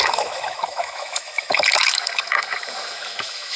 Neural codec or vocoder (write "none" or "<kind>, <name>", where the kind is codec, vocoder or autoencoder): autoencoder, DAC-VAE